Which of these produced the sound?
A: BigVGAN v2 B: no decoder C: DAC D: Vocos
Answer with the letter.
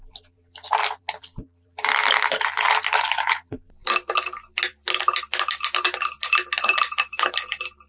A